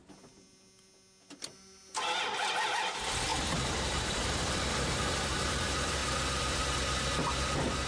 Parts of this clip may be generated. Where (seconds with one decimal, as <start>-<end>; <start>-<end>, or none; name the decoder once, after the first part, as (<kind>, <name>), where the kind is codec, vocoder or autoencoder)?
3.3-5.0 (vocoder, BigVGAN v2)